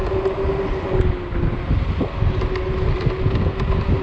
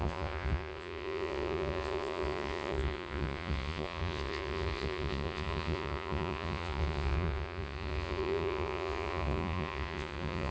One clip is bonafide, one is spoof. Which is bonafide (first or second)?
first